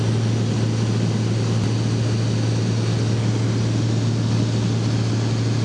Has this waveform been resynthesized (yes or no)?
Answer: no